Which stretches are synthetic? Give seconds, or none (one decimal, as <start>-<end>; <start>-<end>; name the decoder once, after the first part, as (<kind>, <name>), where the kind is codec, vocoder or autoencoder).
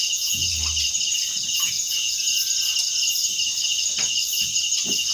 0.0-0.4 (vocoder, Vocos); 1.5-2.3